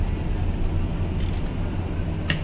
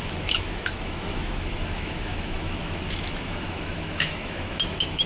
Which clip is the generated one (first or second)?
second